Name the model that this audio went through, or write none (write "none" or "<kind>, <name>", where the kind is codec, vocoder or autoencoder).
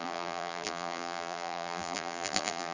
vocoder, BigVGAN v2